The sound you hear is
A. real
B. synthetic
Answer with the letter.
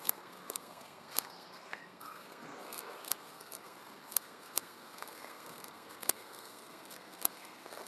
B